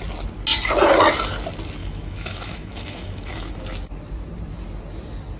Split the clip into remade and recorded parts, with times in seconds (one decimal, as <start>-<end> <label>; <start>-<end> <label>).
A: 0.0-1.8 recorded; 1.8-3.5 remade; 3.5-5.4 recorded